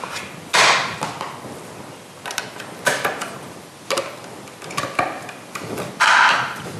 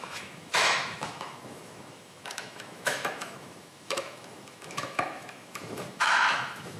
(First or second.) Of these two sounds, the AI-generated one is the second